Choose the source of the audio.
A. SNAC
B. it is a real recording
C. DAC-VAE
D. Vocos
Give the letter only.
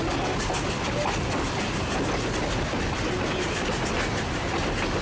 B